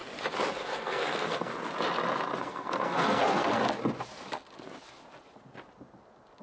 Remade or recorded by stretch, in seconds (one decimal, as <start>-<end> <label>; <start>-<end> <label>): 0.0-0.5 recorded; 0.5-1.5 remade; 1.5-2.4 recorded; 2.4-3.6 remade; 3.6-6.4 recorded